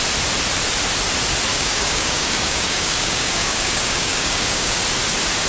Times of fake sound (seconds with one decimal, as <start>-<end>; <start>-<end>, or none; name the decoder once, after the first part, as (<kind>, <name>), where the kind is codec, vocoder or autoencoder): 1.5-4.8 (codec, DAC)